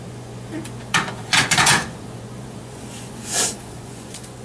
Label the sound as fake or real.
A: fake